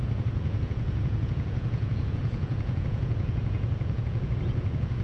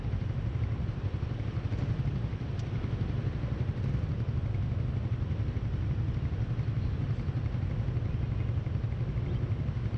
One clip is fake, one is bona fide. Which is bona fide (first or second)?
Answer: second